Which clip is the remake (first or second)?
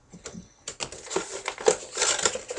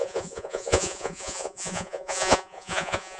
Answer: second